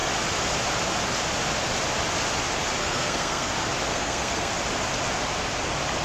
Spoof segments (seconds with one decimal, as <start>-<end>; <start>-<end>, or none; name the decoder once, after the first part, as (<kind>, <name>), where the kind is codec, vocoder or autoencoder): 2.8-3.5 (codec, SNAC); 3.9-4.5